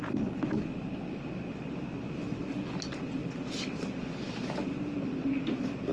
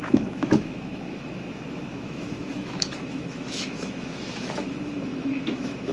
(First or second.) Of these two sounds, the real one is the first